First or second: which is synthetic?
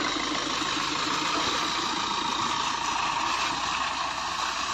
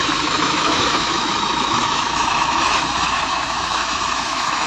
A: second